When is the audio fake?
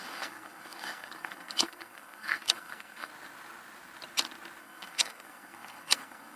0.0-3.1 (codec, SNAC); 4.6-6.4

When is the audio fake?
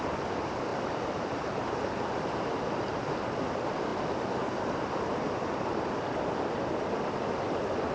0.7-2.9 (vocoder, BigVGAN v2)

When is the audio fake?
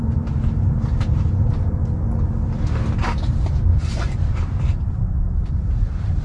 0.0-1.8 (vocoder, BigVGAN v2); 5.5-6.2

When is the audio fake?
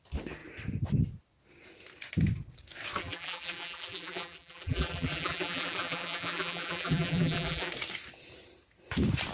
3.0-7.7 (vocoder, BigVGAN v2)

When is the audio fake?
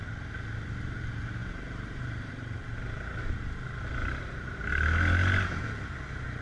1.4-3.3 (vocoder, BigVGAN v2); 4.0-4.7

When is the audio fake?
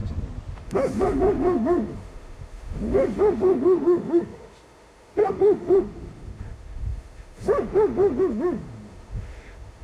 0.5-9.8 (autoencoder, DAC-VAE)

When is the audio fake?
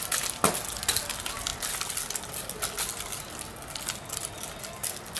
none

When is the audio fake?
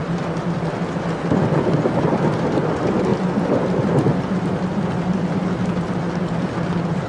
none